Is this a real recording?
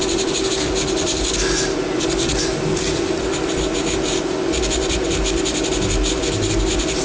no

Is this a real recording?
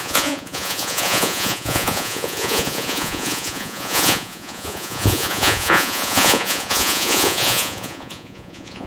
no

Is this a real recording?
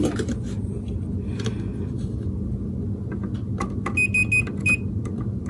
yes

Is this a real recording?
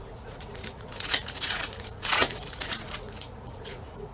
no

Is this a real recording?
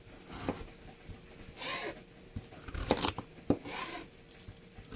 yes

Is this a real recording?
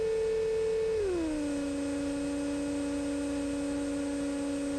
yes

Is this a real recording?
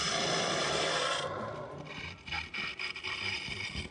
no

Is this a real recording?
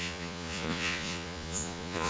no